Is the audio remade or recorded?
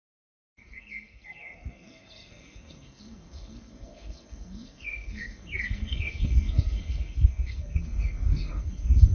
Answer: remade